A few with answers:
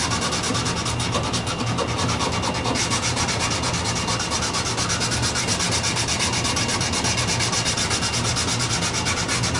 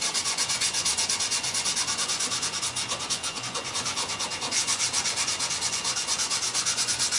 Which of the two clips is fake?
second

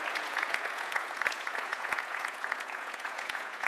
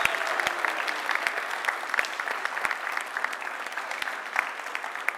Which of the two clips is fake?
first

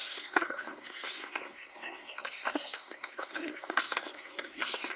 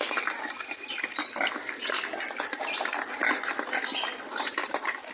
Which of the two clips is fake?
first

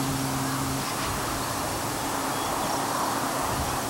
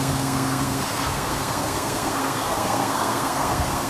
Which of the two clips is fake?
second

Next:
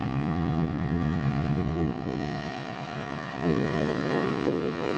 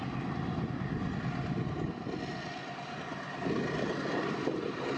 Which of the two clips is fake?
first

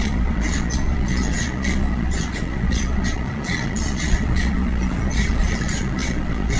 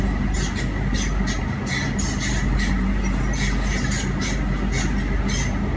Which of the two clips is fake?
first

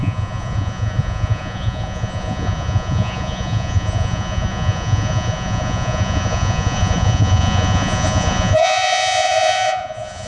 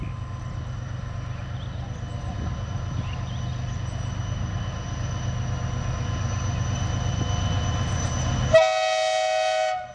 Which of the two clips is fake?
first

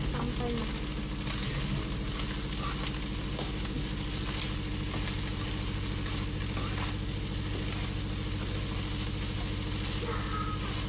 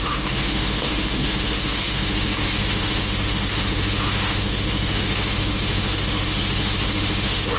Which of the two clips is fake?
second